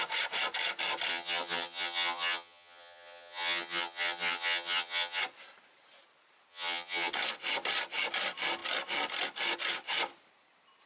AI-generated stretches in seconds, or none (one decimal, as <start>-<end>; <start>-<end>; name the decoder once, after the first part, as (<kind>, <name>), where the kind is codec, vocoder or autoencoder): 1.1-5.2 (vocoder, HiFi-GAN); 6.5-7.1